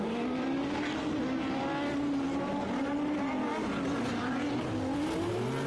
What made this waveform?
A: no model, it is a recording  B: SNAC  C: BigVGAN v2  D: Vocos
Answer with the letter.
A